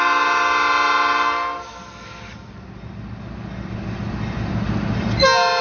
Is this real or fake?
real